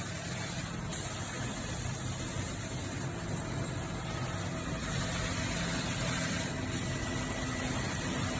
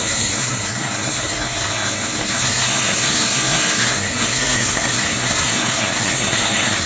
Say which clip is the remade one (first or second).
second